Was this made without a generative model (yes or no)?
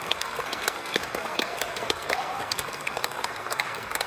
no